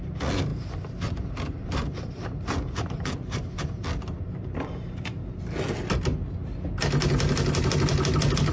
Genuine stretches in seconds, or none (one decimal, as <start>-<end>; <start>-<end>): 0.0-0.5; 5.4-8.5